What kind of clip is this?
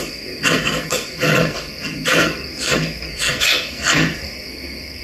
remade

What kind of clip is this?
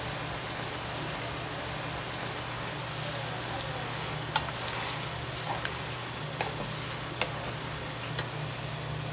recorded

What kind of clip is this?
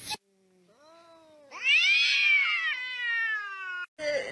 recorded